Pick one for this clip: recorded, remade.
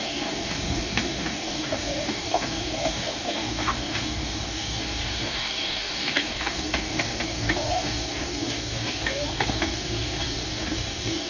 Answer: remade